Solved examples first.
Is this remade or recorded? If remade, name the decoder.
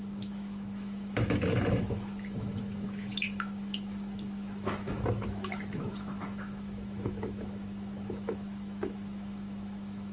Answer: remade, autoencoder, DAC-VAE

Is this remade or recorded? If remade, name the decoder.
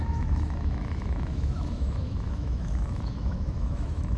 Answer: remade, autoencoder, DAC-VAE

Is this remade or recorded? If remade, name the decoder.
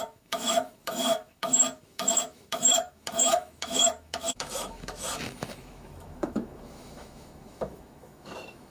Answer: remade, autoencoder, DAC-VAE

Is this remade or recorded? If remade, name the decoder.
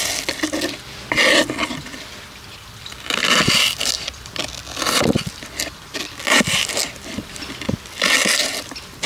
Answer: recorded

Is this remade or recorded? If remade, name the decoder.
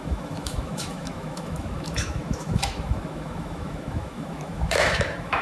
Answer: remade, autoencoder, DAC-VAE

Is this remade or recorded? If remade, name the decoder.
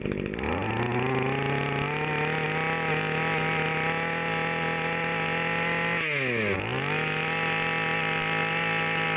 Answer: recorded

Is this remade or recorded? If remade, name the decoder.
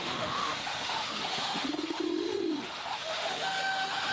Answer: remade, autoencoder, DAC-VAE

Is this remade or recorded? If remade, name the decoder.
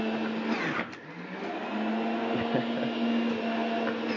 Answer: recorded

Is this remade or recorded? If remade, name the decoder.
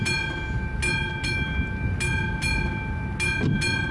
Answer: recorded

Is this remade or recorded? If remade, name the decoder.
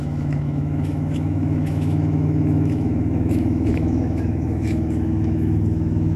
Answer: remade, autoencoder, DAC-VAE